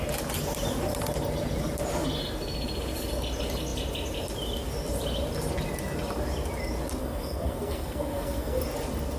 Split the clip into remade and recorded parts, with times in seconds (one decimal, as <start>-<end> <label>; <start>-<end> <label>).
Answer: 0.0-7.0 recorded; 7.0-8.6 remade; 8.6-9.2 recorded